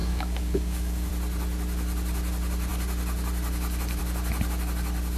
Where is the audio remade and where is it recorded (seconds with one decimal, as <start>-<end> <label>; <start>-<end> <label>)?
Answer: 0.0-1.1 remade; 1.1-5.2 recorded